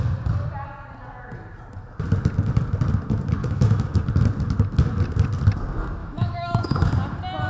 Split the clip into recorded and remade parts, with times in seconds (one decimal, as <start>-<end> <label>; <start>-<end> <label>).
0.0-3.4 recorded; 3.4-4.0 remade; 4.0-6.0 recorded; 6.0-6.9 remade; 6.9-7.5 recorded